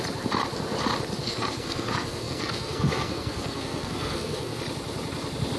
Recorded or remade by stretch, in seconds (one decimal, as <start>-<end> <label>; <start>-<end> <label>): 0.0-1.2 recorded; 1.2-4.6 remade; 4.6-5.6 recorded

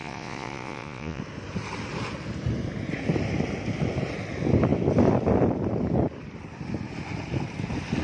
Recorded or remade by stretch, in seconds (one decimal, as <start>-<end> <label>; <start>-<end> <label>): 0.0-1.2 remade; 1.2-8.0 recorded

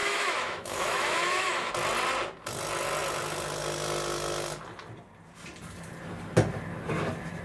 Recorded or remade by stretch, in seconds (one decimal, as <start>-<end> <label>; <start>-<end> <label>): 0.0-1.7 remade; 1.7-7.4 recorded

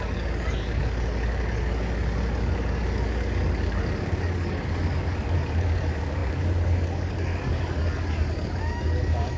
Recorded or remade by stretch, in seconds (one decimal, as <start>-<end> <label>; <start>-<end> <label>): 0.0-9.4 remade

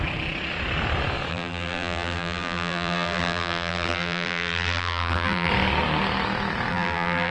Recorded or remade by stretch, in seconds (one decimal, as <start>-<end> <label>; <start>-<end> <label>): 0.0-1.3 recorded; 1.3-5.5 remade; 5.5-6.7 recorded; 6.7-7.3 remade

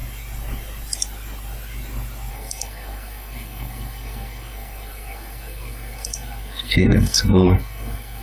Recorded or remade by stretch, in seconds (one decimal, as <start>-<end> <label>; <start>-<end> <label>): 0.0-2.3 recorded; 2.3-8.2 remade

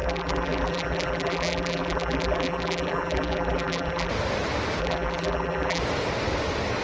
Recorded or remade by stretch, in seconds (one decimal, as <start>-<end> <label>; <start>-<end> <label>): 0.0-4.1 remade; 4.1-4.8 recorded; 4.8-5.8 remade; 5.8-6.8 recorded